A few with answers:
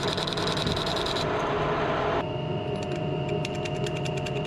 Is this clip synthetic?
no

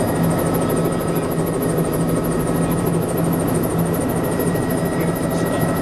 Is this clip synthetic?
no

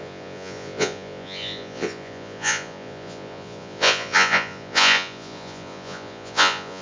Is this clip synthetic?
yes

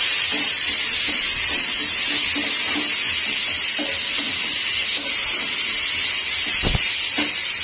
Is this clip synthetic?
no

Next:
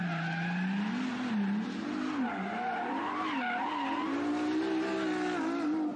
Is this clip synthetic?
no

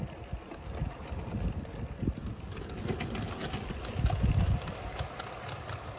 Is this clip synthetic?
no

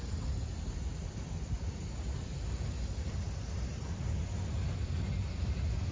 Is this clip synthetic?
no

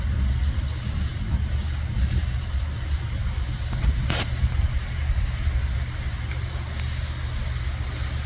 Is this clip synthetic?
no